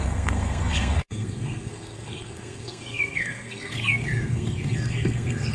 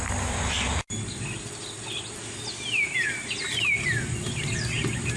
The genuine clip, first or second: second